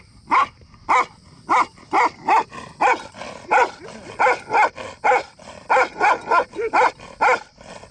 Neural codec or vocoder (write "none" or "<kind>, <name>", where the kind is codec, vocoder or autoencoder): none